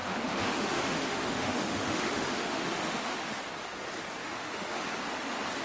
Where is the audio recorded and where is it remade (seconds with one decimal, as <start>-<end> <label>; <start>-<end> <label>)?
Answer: 0.0-3.4 remade; 3.4-4.2 recorded; 4.2-4.8 remade; 4.8-5.6 recorded